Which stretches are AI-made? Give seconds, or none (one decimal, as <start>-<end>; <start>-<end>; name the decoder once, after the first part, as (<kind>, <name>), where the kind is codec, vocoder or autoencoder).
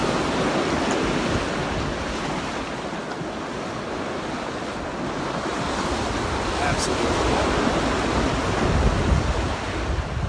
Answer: none